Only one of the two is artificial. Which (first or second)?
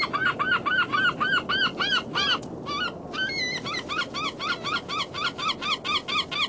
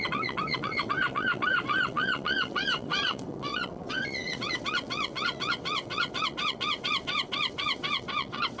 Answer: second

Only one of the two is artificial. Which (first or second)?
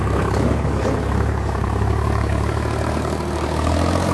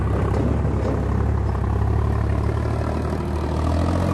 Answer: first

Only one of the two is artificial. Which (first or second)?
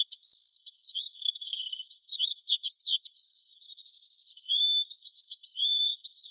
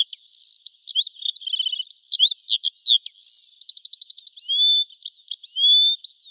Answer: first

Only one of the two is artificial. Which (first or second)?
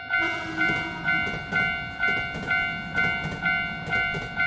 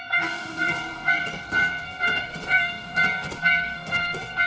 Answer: second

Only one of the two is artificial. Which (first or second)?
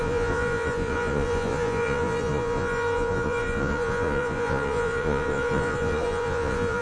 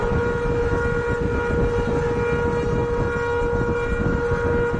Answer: first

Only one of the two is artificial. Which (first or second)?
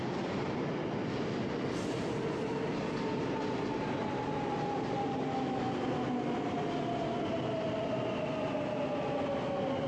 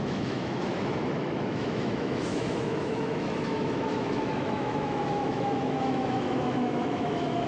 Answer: second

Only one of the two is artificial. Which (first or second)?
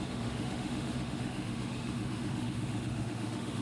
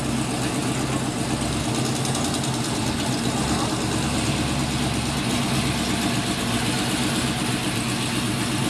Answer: first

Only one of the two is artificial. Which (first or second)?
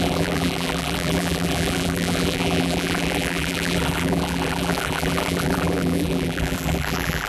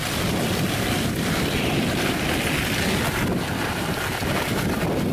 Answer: first